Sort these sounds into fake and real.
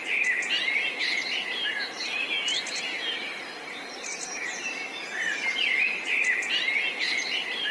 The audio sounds real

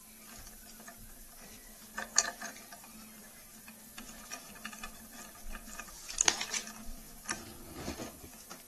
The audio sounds real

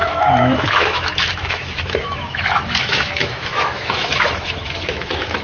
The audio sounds fake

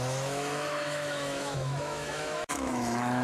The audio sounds fake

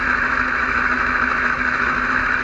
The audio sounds fake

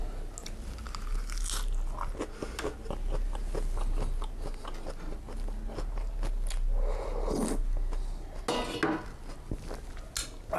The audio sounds real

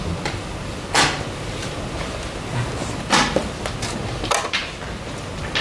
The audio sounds real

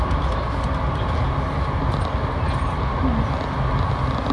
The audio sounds real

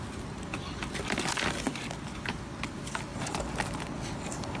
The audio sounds real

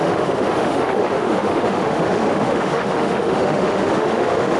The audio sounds fake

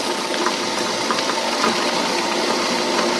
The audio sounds real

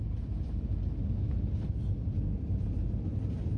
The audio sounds real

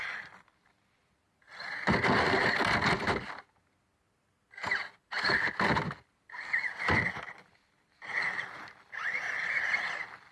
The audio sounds real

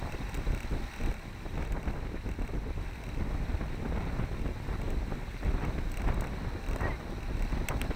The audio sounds real